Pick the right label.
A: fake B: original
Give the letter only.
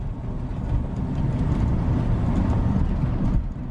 B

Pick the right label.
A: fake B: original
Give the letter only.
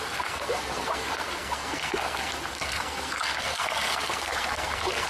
A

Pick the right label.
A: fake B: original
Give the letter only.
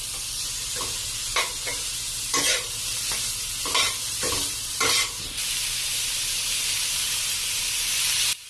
B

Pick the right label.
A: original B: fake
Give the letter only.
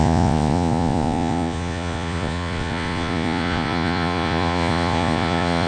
B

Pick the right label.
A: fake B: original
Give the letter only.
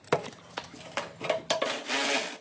B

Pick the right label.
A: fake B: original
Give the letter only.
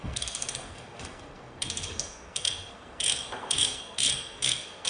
A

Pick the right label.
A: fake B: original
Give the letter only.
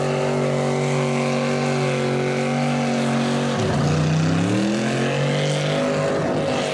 B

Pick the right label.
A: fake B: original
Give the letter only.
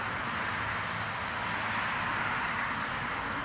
B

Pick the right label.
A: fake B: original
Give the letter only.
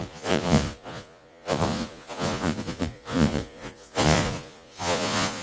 A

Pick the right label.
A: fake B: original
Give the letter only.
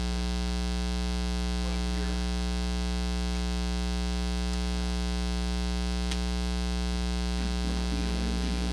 B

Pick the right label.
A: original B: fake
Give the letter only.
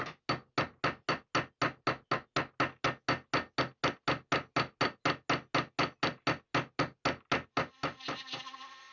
A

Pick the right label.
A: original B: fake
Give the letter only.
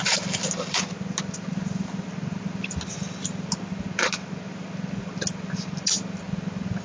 A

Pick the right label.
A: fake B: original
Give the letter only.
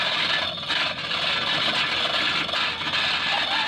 B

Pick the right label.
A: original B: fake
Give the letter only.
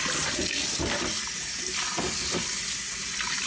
A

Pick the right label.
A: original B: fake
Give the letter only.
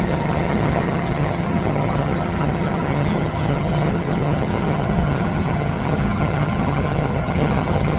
B